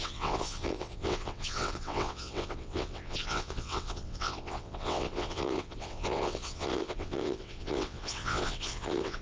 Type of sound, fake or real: fake